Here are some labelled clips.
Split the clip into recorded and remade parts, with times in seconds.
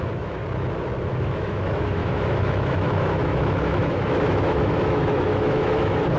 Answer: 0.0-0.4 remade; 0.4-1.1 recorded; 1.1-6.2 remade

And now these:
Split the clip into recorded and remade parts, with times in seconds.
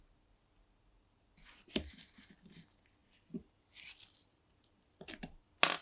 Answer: 0.0-5.8 recorded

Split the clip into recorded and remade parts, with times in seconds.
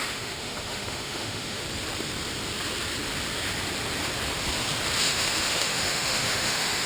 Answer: 0.0-1.6 remade; 1.6-5.0 recorded; 5.0-6.9 remade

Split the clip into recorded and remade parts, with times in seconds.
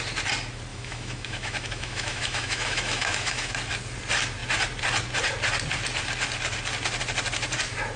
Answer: 0.0-0.7 recorded; 0.7-3.5 remade; 3.5-8.0 recorded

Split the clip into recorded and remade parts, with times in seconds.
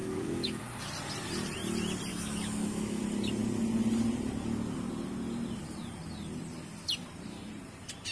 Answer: 0.0-0.6 remade; 0.6-2.1 recorded; 2.1-3.0 remade; 3.0-8.1 recorded